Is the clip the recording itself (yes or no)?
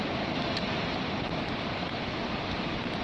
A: yes